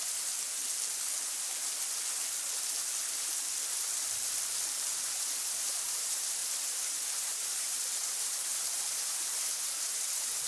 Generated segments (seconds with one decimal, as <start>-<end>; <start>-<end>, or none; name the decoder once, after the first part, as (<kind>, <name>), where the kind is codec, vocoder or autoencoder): 0.0-0.6 (vocoder, BigVGAN v2); 5.0-10.5